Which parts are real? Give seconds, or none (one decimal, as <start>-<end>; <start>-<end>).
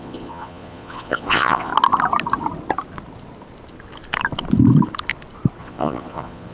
1.7-5.6